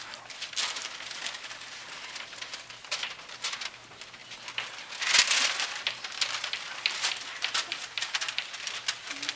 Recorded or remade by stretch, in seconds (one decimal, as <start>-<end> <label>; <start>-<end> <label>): 0.0-9.4 recorded